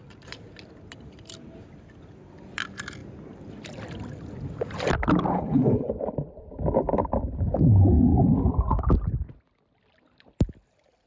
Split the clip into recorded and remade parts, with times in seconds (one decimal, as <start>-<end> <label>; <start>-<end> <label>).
0.0-5.3 recorded; 5.3-5.9 remade; 5.9-11.1 recorded